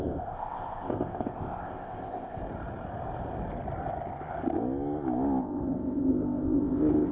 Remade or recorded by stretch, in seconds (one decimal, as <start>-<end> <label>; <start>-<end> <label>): 0.0-2.4 remade; 2.4-5.4 recorded; 5.4-7.1 remade